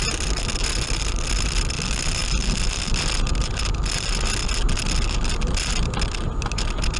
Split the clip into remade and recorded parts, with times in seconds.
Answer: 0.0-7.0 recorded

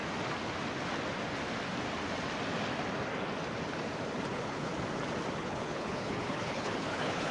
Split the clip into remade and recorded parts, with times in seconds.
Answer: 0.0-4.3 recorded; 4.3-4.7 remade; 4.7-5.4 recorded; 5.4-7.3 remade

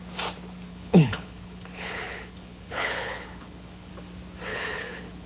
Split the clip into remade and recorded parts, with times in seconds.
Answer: 0.0-0.7 recorded; 0.7-3.9 remade; 3.9-4.5 recorded; 4.5-5.3 remade

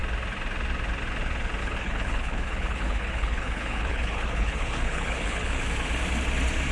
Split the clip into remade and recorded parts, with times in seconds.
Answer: 0.0-1.6 recorded; 1.6-5.6 remade; 5.6-6.7 recorded